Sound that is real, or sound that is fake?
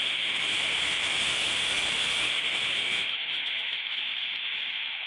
fake